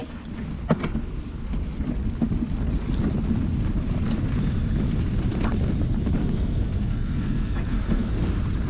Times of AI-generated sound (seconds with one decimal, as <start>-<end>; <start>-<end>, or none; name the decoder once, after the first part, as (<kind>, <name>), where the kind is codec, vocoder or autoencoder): 6.2-8.2 (codec, SNAC)